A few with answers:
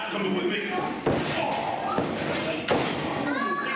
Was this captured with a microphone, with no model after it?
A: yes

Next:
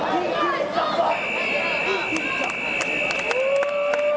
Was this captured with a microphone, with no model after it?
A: yes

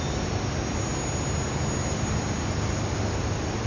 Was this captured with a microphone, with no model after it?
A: yes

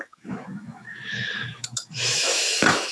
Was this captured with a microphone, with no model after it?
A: no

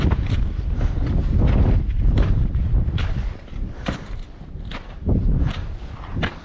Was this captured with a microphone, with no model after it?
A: no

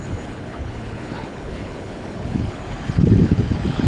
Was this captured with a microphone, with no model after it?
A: no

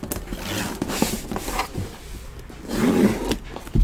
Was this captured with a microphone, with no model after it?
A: yes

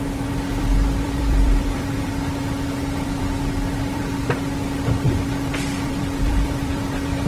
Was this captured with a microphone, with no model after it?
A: no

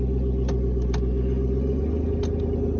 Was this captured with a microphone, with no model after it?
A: yes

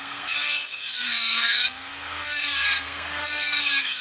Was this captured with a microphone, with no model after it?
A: no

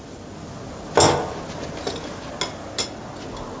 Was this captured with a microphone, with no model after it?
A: yes